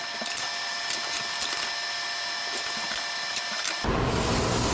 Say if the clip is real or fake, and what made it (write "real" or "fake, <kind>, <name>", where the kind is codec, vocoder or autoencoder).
real